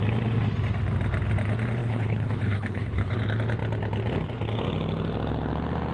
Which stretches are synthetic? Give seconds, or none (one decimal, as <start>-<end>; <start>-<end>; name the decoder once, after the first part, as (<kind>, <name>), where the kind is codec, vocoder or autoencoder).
1.8-3.2 (codec, HILCodec)